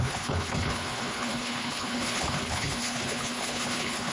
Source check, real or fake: fake